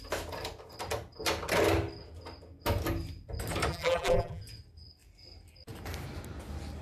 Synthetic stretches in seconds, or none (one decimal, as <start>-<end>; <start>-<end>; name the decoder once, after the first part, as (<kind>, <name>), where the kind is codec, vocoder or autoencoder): 3.7-4.4 (vocoder, BigVGAN v2)